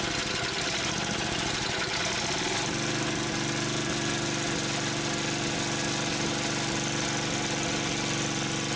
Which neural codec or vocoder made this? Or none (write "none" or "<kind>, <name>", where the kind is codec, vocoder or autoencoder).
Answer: none